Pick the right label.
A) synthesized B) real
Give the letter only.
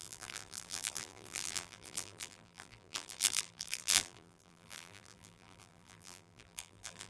A